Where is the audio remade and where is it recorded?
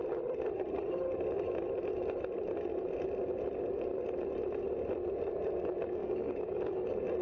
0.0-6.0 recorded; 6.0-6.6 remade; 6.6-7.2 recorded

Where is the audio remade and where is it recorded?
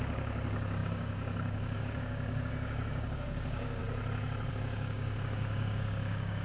0.0-3.8 remade; 3.8-4.5 recorded; 4.5-6.4 remade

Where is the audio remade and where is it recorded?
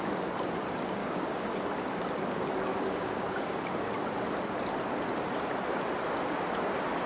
0.0-1.0 recorded; 1.0-1.6 remade; 1.6-2.7 recorded; 2.7-3.9 remade; 3.9-7.1 recorded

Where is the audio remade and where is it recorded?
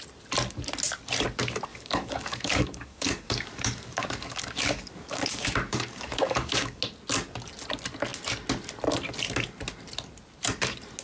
0.0-1.7 recorded; 1.7-6.8 remade; 6.8-11.0 recorded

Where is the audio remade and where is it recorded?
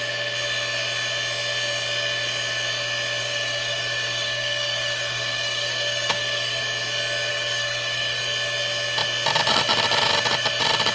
0.0-3.2 recorded; 3.2-6.6 remade; 6.6-7.3 recorded; 7.3-8.2 remade; 8.2-10.9 recorded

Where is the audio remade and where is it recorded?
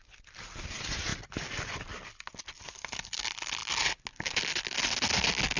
0.0-5.6 recorded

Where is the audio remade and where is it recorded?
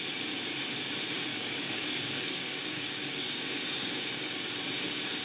0.0-1.3 recorded; 1.3-4.4 remade; 4.4-5.2 recorded